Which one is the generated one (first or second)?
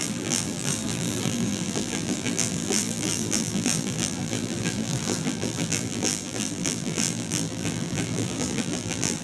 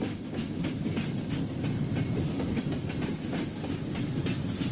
first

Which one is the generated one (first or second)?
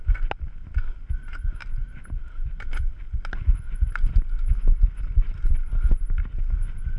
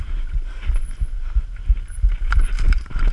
second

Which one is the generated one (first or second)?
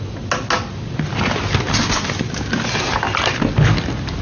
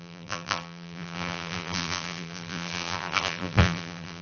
second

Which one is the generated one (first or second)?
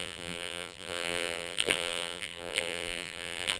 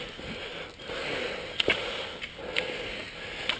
first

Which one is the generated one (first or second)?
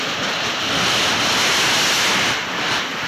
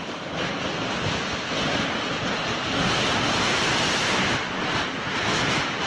second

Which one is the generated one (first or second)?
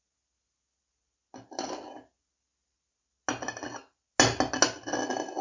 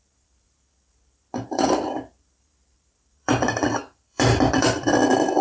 second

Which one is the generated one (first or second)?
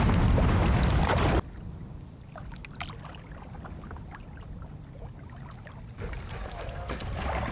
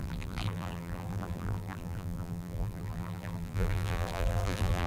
second